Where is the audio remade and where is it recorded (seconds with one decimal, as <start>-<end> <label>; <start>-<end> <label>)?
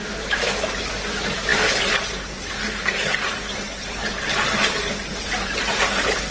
0.0-0.5 remade; 0.5-6.3 recorded